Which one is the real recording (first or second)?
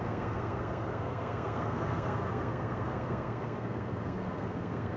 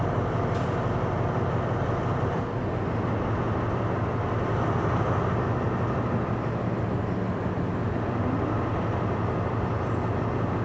second